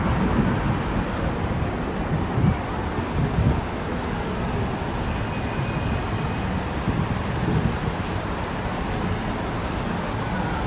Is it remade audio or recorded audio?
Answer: recorded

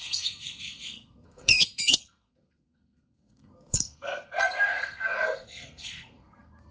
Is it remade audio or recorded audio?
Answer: remade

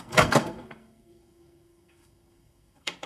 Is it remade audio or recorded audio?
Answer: remade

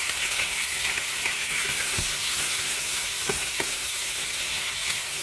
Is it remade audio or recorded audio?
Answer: remade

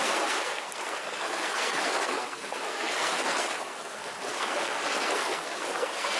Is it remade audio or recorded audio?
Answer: remade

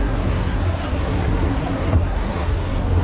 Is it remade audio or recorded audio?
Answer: remade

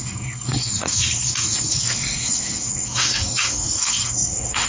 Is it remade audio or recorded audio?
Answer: remade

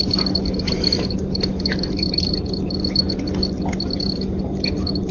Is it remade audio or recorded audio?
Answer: recorded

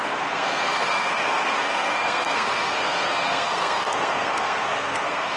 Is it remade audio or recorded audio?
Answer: remade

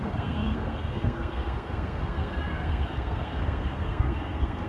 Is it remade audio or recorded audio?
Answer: remade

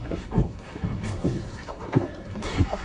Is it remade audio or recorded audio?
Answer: remade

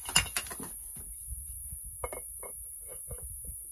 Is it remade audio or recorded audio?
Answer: recorded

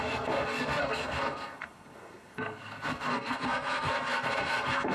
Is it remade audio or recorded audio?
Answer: remade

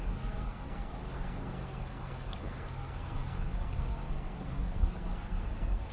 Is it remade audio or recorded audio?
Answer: remade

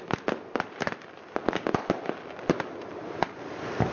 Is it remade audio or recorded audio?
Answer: recorded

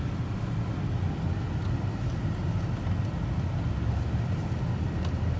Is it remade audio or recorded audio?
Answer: recorded